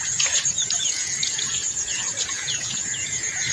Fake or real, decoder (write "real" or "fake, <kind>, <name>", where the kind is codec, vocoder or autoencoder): fake, vocoder, Vocos